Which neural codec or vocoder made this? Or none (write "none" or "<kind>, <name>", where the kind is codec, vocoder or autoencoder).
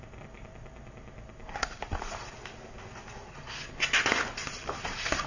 none